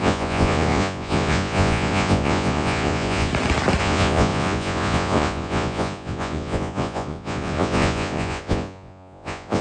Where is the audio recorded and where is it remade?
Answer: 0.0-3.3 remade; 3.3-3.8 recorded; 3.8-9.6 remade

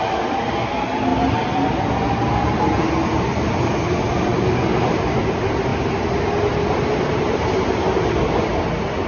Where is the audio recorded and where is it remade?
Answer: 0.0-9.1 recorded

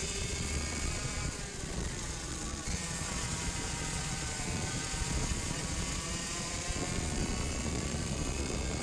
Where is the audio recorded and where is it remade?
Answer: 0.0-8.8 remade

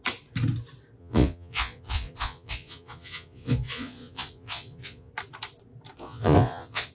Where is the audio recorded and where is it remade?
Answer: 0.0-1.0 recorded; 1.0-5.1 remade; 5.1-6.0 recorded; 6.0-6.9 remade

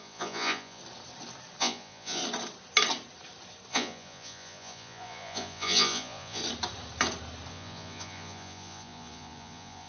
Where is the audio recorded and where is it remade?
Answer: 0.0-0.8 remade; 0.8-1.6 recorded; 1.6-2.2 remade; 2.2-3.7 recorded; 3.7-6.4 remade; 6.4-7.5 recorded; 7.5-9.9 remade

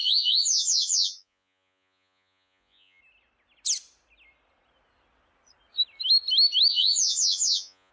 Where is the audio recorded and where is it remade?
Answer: 0.0-3.0 remade; 3.0-6.7 recorded; 6.7-7.9 remade

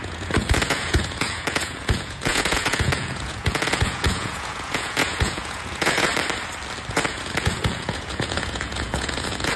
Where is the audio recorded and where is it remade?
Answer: 0.0-6.1 remade; 6.1-6.9 recorded; 6.9-9.6 remade